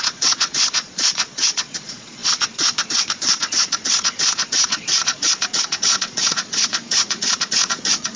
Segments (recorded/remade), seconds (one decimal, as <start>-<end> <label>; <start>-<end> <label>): 0.0-8.2 remade